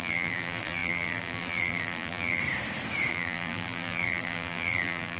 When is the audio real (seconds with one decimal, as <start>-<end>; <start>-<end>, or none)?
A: 2.4-3.1